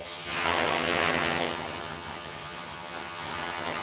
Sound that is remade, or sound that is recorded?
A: remade